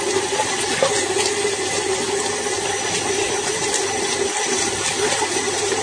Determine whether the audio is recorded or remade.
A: recorded